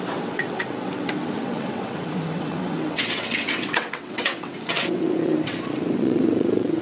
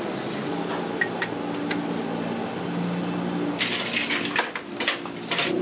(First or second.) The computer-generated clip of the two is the first